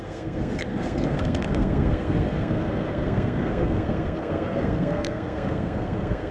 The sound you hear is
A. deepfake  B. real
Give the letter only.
A